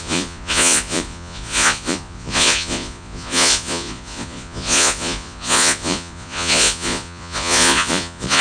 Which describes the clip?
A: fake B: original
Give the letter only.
A